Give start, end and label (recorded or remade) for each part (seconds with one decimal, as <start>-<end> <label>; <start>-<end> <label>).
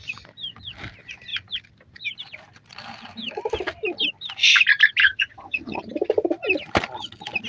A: 0.0-5.0 recorded; 5.0-5.8 remade; 5.8-7.5 recorded